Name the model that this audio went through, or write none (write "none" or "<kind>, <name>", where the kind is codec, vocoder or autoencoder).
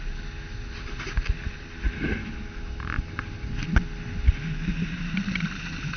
none